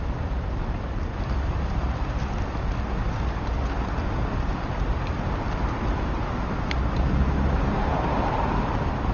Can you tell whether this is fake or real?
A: real